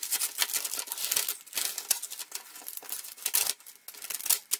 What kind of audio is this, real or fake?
real